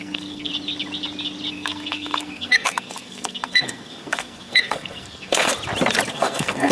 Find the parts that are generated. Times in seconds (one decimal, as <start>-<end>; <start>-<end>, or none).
0.0-0.5; 1.5-5.5; 6.1-6.7

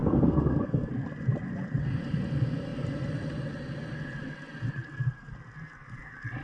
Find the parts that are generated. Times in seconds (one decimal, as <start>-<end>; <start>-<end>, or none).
0.0-0.9

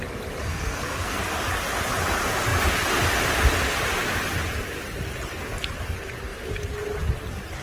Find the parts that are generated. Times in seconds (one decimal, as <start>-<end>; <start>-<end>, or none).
0.5-1.2

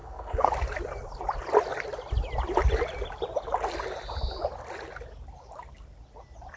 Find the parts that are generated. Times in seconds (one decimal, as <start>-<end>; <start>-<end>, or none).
0.0-0.5

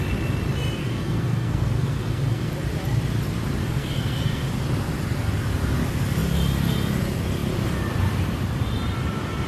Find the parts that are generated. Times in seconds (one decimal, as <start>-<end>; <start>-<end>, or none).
0.8-2.5; 3.6-4.4

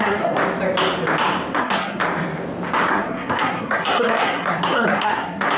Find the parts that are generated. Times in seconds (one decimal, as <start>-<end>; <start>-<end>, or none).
0.0-0.4; 1.6-2.0; 2.9-5.6